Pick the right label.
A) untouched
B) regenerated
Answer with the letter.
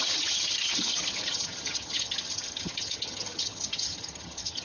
B